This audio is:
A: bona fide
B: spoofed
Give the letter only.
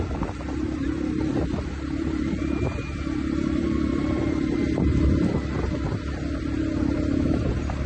B